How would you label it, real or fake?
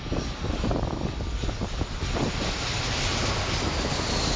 real